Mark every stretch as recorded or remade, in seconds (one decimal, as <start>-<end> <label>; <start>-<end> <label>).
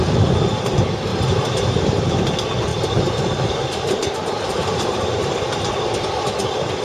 0.0-1.1 recorded; 1.1-1.7 remade; 1.7-2.7 recorded; 2.7-6.0 remade; 6.0-6.8 recorded